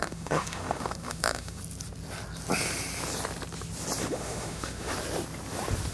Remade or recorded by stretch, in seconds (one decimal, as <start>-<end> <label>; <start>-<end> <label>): 0.0-1.6 remade; 1.6-4.1 recorded; 4.1-4.9 remade; 4.9-5.9 recorded